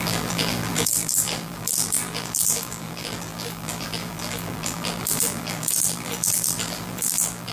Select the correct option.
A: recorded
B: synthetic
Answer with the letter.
B